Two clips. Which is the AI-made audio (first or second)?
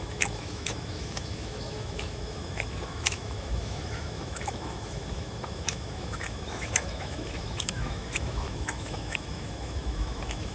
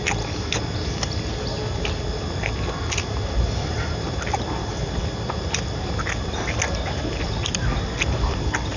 first